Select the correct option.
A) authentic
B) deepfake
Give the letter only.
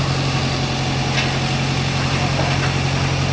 A